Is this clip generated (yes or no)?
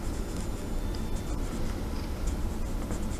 no